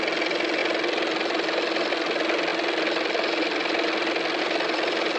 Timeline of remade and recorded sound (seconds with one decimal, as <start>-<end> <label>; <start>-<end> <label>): 0.0-5.2 recorded